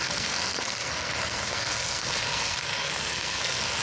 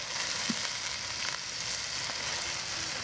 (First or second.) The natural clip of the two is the second